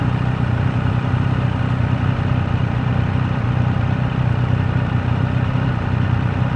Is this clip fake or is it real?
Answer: real